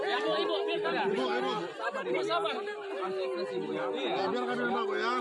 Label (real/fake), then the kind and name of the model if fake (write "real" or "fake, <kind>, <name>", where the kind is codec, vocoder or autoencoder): real